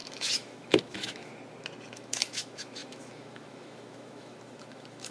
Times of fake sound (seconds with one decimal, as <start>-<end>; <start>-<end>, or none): 0.0-1.3; 1.9-5.1